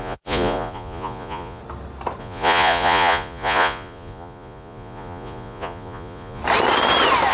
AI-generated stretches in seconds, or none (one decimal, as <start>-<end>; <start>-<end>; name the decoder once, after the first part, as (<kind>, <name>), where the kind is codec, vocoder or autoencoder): 0.0-1.6 (vocoder, Vocos); 2.2-6.4